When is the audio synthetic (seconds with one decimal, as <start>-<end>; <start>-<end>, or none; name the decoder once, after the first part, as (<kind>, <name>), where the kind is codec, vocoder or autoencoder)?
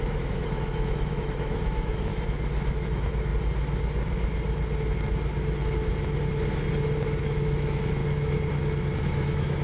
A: 0.0-2.1 (autoencoder, DAC-VAE); 2.7-3.3; 7.2-8.0; 9.0-9.6